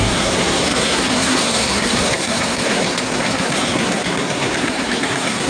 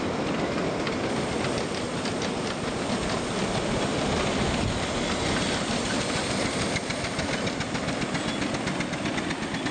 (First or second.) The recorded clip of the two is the second